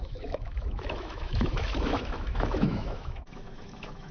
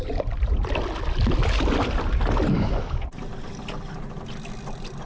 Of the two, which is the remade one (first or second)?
first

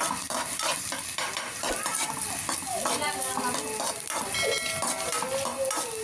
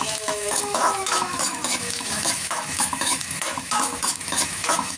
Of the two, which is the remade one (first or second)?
second